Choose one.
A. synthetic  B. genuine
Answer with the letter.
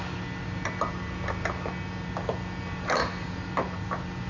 B